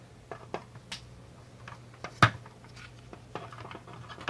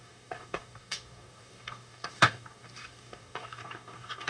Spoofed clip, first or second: second